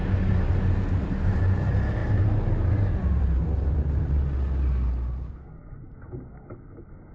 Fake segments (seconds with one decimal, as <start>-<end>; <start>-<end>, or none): none